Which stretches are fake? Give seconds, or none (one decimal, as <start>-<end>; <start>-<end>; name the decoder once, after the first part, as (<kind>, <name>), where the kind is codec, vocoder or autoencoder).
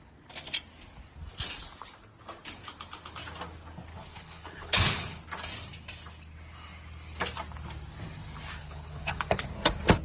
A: 3.9-5.2 (codec, HILCodec); 8.6-9.4